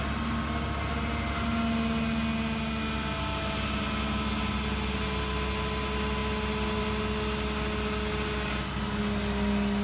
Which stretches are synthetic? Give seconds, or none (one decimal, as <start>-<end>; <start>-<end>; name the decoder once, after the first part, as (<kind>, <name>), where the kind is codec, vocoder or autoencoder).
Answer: none